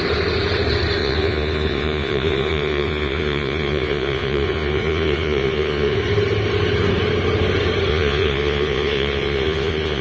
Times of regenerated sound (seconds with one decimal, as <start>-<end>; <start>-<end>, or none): 1.0-6.0; 7.9-10.0

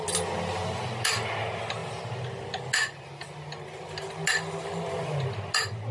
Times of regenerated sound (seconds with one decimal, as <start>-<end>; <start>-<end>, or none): none

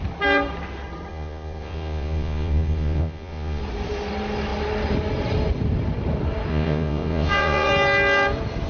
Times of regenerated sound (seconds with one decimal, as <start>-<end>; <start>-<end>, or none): 1.1-3.6; 6.5-7.7

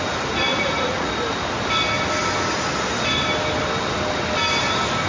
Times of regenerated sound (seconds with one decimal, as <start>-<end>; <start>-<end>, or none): 0.5-1.1

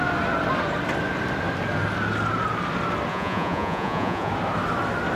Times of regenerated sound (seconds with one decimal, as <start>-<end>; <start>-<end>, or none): 3.1-4.3

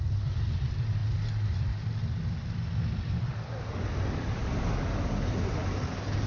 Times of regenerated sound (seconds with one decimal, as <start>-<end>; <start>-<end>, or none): none